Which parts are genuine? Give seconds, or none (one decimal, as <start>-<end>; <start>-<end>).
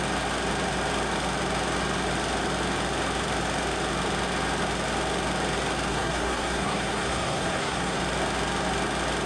0.0-5.9; 8.0-9.3